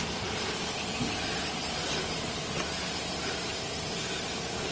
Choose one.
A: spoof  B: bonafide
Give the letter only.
B